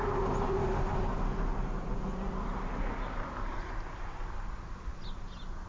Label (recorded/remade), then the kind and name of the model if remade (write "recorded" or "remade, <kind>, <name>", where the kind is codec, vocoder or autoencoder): recorded